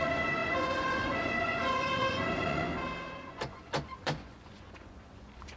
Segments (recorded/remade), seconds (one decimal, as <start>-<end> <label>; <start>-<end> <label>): 0.0-2.7 remade; 2.7-3.3 recorded; 3.3-5.6 remade